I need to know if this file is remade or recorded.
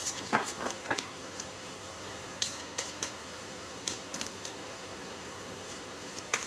remade